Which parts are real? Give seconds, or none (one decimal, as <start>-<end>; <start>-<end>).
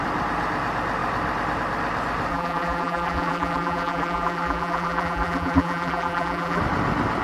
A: 0.0-2.3; 6.6-7.2